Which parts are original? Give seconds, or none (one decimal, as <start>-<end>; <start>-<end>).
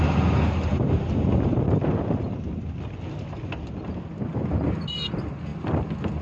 0.0-6.2